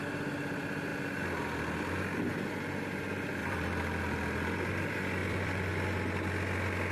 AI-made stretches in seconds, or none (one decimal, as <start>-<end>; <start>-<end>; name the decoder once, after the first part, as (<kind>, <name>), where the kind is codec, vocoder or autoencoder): 3.4-4.0 (vocoder, BigVGAN v2); 5.2-5.7